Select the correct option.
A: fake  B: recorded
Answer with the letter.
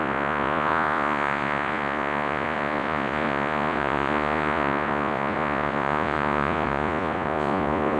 A